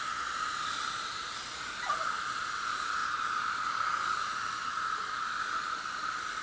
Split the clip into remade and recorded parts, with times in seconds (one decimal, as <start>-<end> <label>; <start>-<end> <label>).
0.0-6.4 recorded